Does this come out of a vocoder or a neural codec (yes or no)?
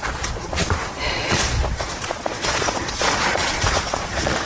yes